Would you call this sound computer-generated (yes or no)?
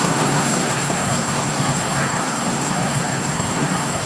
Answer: yes